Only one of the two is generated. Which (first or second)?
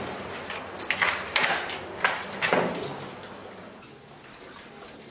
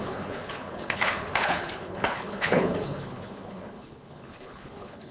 second